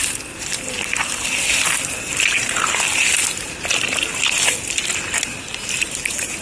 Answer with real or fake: real